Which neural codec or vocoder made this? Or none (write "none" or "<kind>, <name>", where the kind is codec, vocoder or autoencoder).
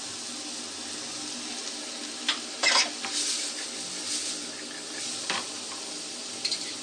none